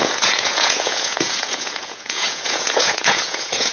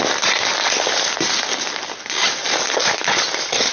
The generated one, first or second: first